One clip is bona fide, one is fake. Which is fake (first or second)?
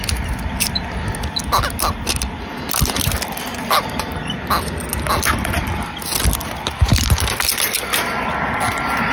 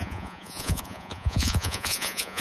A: second